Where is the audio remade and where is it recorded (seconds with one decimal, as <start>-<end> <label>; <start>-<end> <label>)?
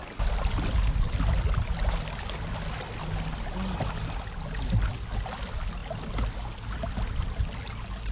0.0-8.1 recorded